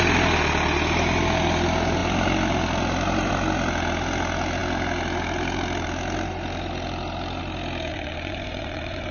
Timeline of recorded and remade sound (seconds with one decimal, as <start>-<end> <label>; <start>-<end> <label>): 0.0-7.9 recorded; 7.9-9.1 remade